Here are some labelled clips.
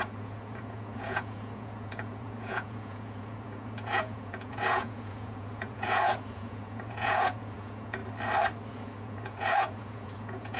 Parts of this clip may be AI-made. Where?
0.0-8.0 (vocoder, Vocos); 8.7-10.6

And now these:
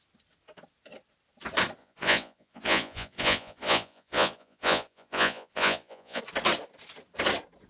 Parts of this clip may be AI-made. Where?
1.8-6.2 (vocoder, Vocos)

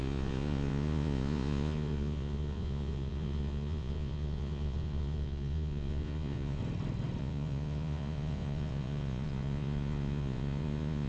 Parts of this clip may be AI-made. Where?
0.0-6.6 (vocoder, Vocos); 7.2-11.1

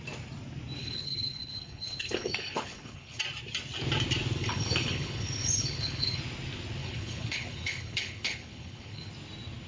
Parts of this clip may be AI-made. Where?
0.8-3.2 (codec, HILCodec); 4.4-6.2; 6.8-9.1

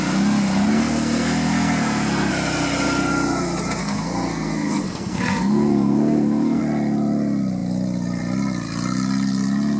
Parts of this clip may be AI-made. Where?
0.7-2.3 (codec, SNAC); 3.8-6.6